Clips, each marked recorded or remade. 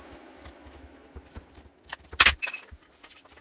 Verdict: recorded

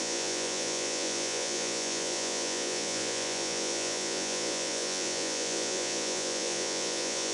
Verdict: remade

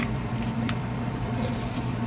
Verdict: remade